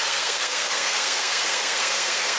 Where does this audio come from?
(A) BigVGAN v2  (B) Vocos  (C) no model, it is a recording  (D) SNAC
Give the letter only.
D